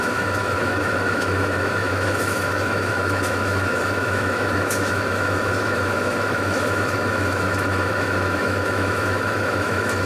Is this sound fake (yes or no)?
yes